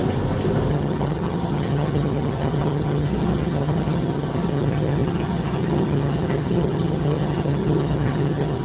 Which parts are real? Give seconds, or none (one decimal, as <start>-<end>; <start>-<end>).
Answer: 0.0-0.7